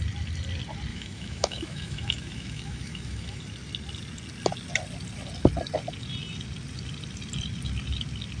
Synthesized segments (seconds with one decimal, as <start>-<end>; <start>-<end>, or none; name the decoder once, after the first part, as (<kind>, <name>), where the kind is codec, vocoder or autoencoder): 0.9-3.4 (autoencoder, DAC-VAE)